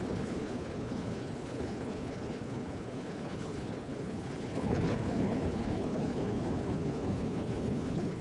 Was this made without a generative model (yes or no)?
no